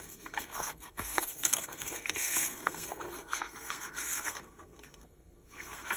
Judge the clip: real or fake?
fake